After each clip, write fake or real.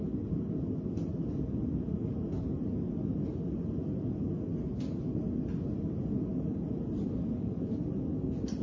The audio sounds real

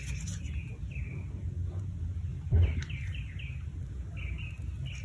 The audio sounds real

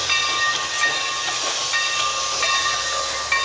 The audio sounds real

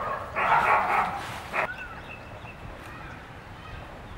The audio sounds fake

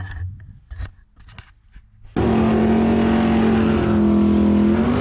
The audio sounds real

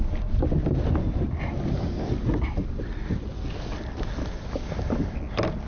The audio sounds real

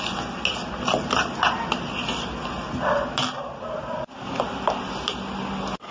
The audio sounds real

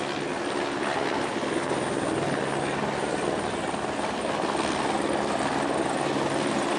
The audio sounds real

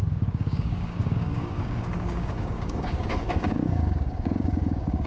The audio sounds fake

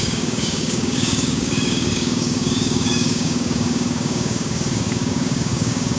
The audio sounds fake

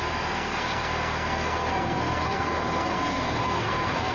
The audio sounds fake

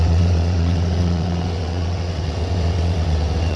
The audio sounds fake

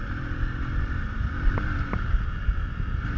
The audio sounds real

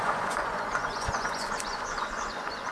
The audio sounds fake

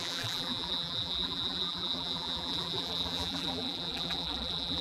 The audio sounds fake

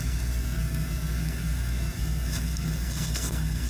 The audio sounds fake